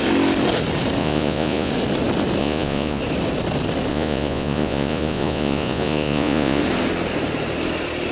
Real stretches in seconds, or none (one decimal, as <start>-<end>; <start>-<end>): 0.0-1.0; 1.7-2.4; 3.0-3.9; 6.6-8.1